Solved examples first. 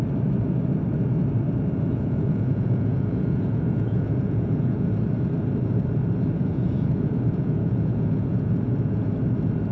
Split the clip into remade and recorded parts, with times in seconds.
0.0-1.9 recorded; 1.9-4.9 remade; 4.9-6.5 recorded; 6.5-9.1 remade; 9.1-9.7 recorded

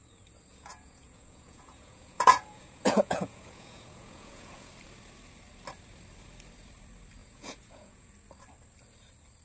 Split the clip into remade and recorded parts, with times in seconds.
0.0-0.5 recorded; 0.5-4.7 remade; 4.7-7.2 recorded; 7.2-8.1 remade; 8.1-9.4 recorded

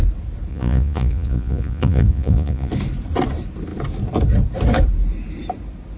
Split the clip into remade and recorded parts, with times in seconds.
0.0-0.5 recorded; 0.5-2.7 remade; 2.7-6.0 recorded